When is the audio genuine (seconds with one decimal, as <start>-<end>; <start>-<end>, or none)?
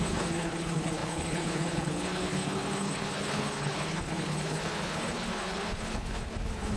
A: none